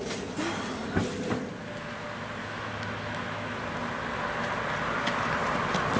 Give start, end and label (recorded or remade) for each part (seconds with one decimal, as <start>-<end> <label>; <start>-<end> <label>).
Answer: 0.0-2.4 recorded; 2.4-3.6 remade; 3.6-6.0 recorded